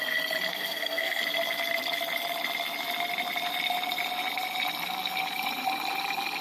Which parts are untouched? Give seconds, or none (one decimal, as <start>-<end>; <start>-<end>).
0.0-0.5; 1.2-6.4